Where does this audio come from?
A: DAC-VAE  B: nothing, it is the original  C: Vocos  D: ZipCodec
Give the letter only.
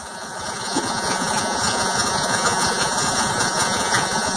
C